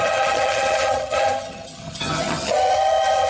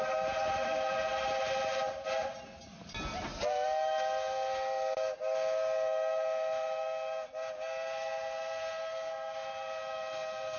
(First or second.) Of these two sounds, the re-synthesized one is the first